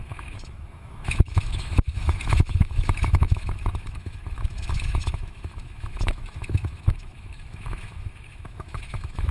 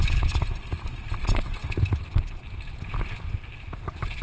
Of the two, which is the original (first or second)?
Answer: second